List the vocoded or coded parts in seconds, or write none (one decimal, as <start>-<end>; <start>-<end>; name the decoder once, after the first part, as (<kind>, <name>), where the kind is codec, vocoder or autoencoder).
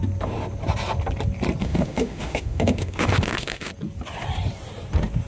1.6-3.7 (autoencoder, DAC-VAE)